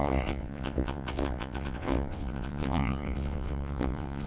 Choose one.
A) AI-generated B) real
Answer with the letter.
A